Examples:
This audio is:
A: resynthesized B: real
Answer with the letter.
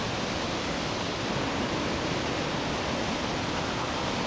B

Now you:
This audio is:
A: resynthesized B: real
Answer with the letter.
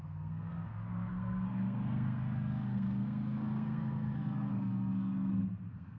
A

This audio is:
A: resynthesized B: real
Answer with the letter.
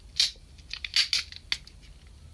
B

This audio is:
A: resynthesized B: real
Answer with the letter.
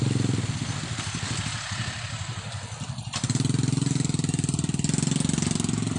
B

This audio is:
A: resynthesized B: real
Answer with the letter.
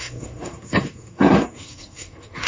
A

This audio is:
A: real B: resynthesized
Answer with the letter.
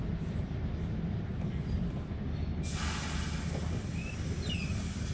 A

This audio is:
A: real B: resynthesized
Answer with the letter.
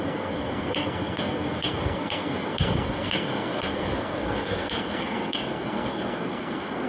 B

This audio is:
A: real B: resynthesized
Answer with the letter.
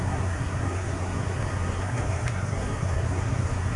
B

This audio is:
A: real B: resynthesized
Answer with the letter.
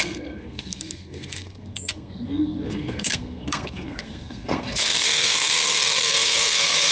B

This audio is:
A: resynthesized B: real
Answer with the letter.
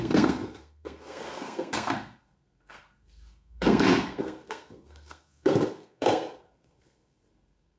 A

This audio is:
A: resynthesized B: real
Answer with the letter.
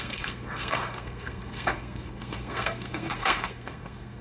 A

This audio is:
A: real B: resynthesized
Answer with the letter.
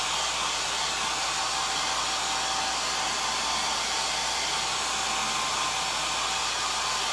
A